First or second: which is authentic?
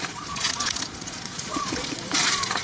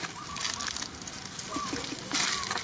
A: second